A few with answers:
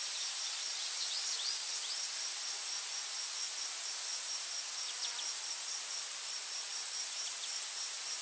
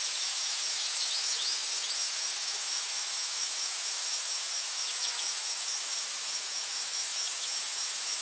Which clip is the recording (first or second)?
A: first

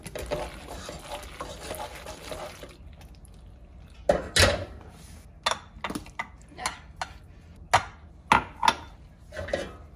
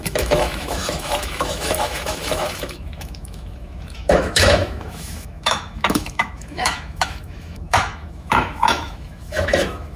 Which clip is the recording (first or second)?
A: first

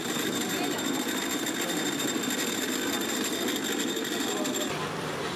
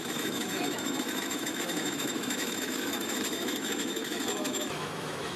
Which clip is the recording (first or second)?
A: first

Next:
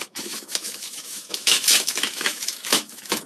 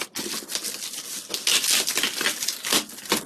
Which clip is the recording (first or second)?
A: second